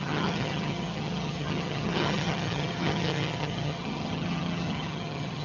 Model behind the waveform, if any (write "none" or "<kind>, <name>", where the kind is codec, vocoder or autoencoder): vocoder, HiFi-GAN